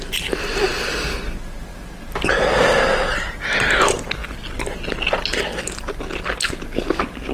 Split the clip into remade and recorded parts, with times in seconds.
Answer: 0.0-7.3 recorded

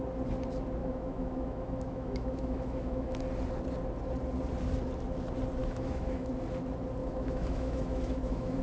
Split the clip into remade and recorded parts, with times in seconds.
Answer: 0.0-0.8 recorded; 0.8-3.2 remade; 3.2-5.6 recorded; 5.6-6.3 remade; 6.3-7.0 recorded; 7.0-8.6 remade

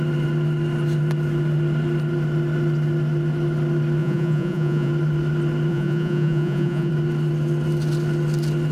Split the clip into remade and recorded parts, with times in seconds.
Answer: 0.0-4.0 recorded; 4.0-4.9 remade; 4.9-5.7 recorded; 5.7-6.9 remade; 6.9-8.7 recorded

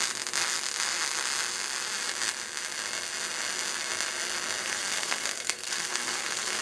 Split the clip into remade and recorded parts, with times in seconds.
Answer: 0.0-4.6 recorded; 4.6-6.6 remade

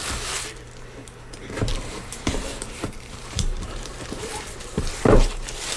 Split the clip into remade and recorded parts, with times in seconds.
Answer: 0.0-1.7 recorded; 1.7-4.8 remade; 4.8-5.8 recorded

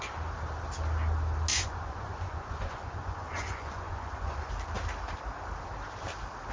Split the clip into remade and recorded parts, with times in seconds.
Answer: 0.0-1.5 recorded; 1.5-4.5 remade; 4.5-6.5 recorded